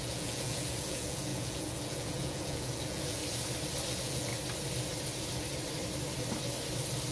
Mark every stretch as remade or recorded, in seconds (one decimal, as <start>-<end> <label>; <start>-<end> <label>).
0.0-3.2 remade; 3.2-3.9 recorded; 3.9-4.3 remade; 4.3-7.1 recorded

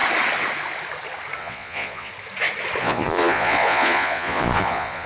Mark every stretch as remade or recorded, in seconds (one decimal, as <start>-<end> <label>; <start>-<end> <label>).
0.0-1.4 recorded; 1.4-2.1 remade; 2.1-2.8 recorded; 2.8-5.1 remade

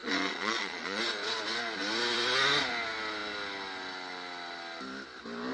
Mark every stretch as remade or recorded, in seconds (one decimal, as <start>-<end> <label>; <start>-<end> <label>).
0.0-1.0 remade; 1.0-5.5 recorded

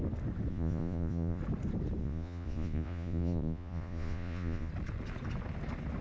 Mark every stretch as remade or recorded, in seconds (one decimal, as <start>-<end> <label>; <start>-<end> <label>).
0.0-0.5 recorded; 0.5-1.4 remade; 1.4-2.0 recorded; 2.0-4.7 remade; 4.7-6.0 recorded

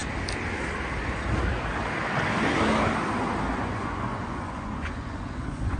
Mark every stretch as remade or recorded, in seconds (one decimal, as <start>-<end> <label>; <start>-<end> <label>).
0.0-3.5 recorded; 3.5-5.8 remade

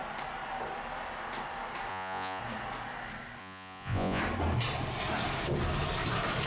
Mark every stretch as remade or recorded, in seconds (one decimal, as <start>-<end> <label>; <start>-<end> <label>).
0.0-1.9 recorded; 1.9-2.4 remade; 2.4-3.4 recorded; 3.4-4.2 remade; 4.2-6.5 recorded

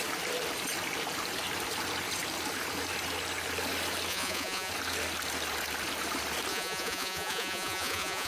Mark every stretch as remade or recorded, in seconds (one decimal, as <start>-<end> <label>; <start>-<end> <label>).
0.0-4.1 recorded; 4.1-4.7 remade; 4.7-6.5 recorded; 6.5-8.3 remade

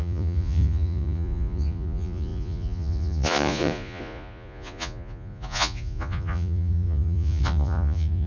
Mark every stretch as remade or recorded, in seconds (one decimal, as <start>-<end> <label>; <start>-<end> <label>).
0.0-8.3 remade